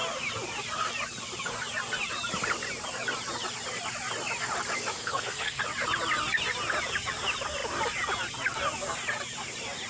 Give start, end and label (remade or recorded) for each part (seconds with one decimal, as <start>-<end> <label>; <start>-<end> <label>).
0.0-4.9 recorded; 4.9-5.6 remade; 5.6-9.9 recorded